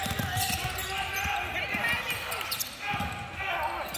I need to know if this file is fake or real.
real